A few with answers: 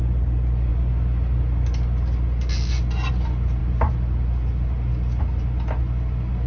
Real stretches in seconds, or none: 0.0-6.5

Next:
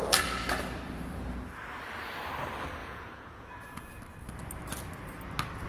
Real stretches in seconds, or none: 0.0-2.8; 4.0-5.7

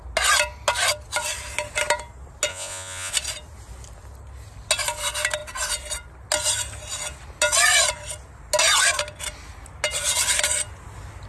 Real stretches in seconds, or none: 0.0-2.5; 3.1-11.3

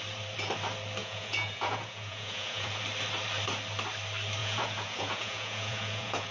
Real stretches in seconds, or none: 0.0-1.0; 2.8-4.4